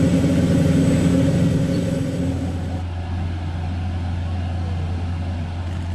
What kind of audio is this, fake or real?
real